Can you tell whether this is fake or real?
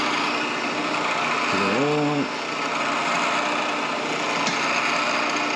real